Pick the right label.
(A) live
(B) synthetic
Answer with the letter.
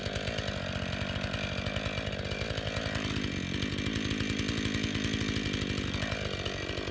A